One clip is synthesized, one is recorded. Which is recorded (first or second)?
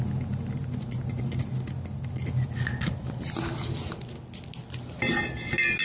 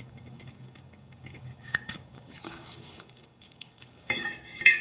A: first